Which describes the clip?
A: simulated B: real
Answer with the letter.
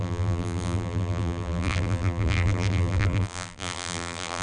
A